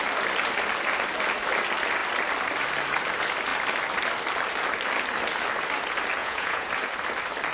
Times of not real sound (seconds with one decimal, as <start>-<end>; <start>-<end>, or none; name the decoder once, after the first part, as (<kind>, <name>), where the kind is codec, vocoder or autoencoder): 6.2-6.7 (vocoder, Vocos)